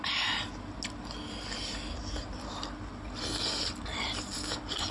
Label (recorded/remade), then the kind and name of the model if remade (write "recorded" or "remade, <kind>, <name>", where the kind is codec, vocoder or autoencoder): recorded